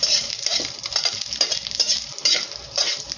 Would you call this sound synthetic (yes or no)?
yes